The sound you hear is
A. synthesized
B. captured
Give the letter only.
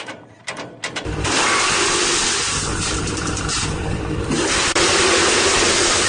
A